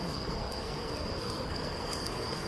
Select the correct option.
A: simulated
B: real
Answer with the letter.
A